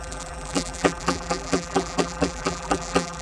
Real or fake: fake